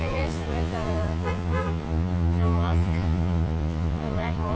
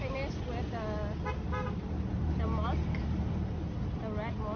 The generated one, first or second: first